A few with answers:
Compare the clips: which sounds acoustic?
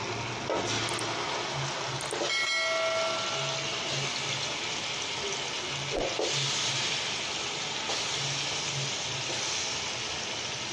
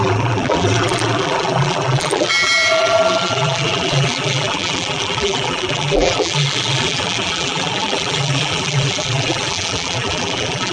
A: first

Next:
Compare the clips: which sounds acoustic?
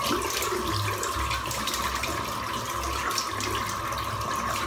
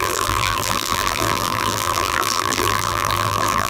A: first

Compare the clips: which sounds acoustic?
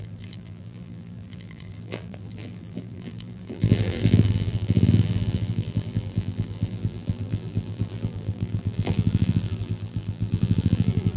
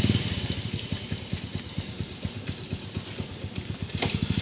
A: second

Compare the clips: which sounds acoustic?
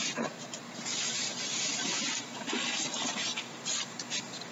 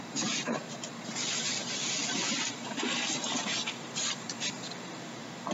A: first